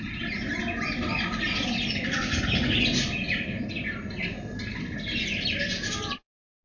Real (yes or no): yes